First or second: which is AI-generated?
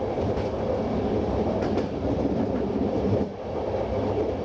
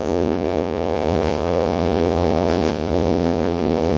second